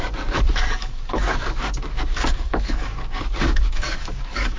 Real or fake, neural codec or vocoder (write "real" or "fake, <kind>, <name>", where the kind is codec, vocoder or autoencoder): fake, codec, DAC